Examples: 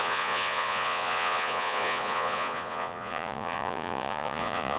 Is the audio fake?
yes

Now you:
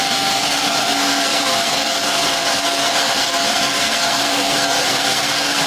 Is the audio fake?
yes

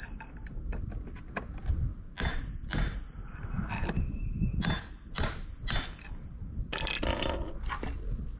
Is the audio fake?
no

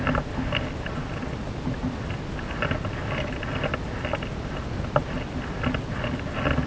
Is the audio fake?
no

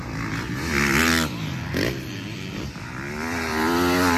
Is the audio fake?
no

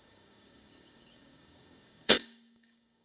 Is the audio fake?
yes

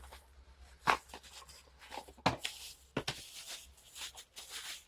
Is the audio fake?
no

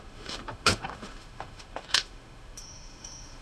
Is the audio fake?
yes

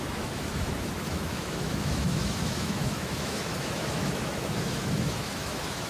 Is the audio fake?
yes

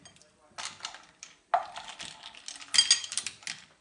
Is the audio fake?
no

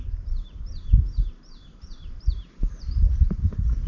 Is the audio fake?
yes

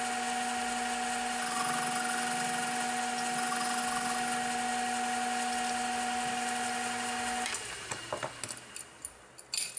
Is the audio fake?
no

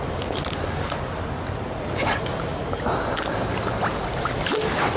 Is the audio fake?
no